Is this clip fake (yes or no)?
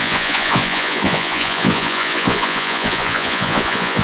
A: yes